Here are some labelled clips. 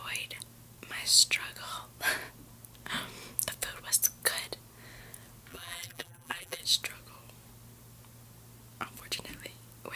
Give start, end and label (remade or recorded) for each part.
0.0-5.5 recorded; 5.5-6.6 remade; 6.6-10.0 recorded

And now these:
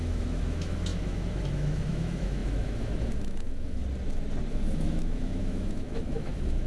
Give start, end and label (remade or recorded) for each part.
0.0-3.8 remade; 3.8-4.5 recorded; 4.5-6.7 remade

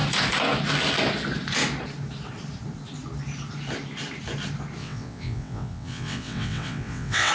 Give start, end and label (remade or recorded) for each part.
0.0-4.8 recorded; 4.8-7.3 remade

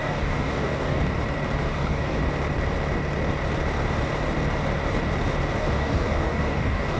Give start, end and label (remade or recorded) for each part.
0.0-1.0 remade; 1.0-1.6 recorded; 1.6-2.2 remade; 2.2-5.6 recorded; 5.6-7.0 remade

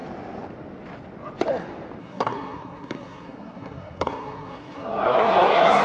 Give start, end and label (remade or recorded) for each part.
0.0-2.0 recorded; 2.0-5.8 remade